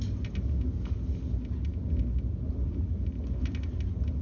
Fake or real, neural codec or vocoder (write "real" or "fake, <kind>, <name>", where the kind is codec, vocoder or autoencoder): real